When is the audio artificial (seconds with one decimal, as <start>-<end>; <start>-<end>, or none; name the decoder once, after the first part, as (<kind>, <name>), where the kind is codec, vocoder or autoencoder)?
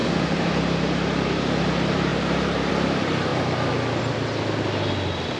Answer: none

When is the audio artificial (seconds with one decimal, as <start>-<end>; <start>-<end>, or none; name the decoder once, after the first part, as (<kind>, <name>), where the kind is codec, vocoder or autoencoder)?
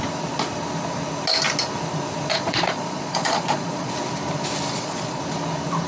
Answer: 2.3-3.9 (vocoder, Vocos); 4.7-5.2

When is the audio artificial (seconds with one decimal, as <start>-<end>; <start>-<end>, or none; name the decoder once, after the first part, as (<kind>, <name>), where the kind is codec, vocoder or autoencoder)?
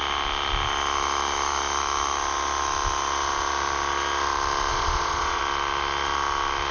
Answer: 4.7-5.4 (vocoder, Vocos)